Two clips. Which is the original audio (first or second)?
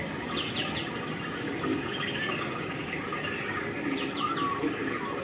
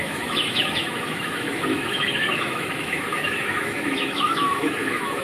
first